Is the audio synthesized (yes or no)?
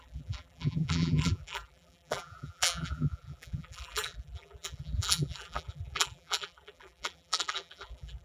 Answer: yes